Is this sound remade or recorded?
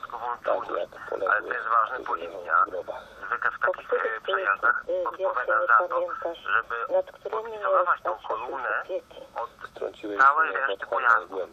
remade